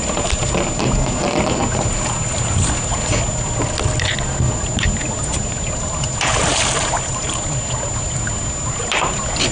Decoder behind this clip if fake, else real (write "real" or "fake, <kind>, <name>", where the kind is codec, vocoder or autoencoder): real